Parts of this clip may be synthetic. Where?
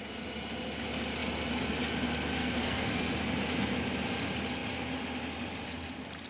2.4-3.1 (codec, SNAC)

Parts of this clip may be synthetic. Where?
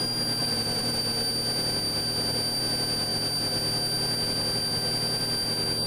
0.4-1.0 (vocoder, BigVGAN v2)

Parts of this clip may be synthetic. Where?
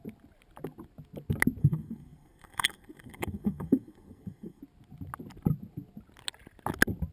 1.6-4.6 (codec, SNAC)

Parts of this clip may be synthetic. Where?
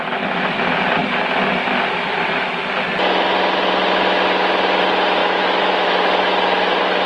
5.2-5.9 (autoencoder, DAC-VAE)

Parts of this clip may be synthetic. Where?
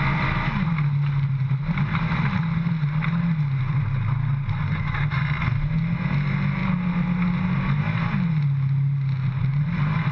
none